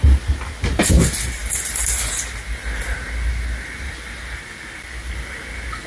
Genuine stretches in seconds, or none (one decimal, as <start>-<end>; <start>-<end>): 0.0-5.9